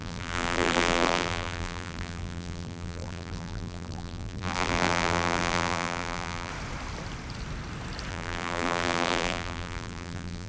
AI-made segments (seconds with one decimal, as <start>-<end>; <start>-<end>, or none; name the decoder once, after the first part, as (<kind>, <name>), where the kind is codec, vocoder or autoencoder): 0.0-6.5 (vocoder, BigVGAN v2); 8.1-10.5